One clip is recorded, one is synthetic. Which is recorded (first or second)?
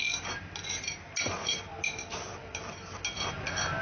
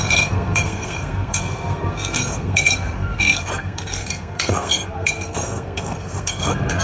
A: first